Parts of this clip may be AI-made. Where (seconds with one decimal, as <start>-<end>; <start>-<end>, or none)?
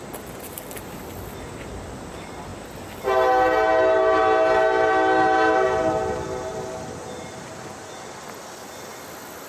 none